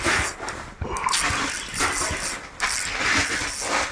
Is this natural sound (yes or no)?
yes